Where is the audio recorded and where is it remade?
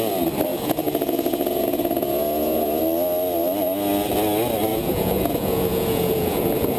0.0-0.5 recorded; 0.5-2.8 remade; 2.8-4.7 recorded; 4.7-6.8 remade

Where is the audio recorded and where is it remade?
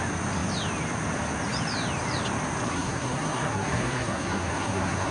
0.0-2.7 recorded; 2.7-5.1 remade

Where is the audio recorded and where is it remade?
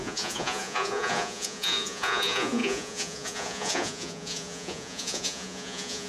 0.0-6.1 remade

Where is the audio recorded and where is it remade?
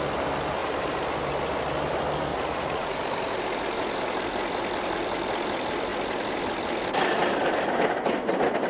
0.0-2.3 recorded; 2.3-3.0 remade; 3.0-8.7 recorded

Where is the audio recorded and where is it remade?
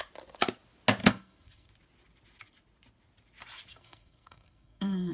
0.0-1.0 recorded; 1.0-1.7 remade; 1.7-3.7 recorded; 3.7-5.1 remade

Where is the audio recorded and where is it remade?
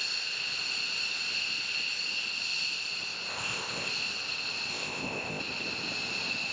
0.0-3.3 recorded; 3.3-3.9 remade; 3.9-4.7 recorded; 4.7-5.4 remade; 5.4-6.5 recorded